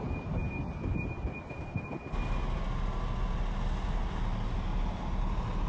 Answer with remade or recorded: recorded